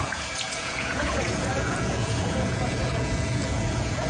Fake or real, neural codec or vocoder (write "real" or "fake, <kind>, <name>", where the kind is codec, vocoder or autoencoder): fake, vocoder, Vocos